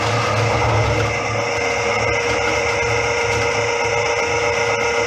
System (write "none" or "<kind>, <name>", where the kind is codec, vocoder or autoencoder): none